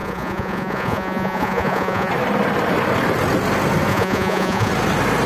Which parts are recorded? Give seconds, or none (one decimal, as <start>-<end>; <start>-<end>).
2.1-3.9; 4.7-5.3